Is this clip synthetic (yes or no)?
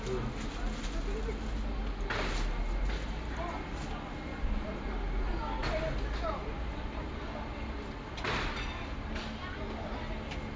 no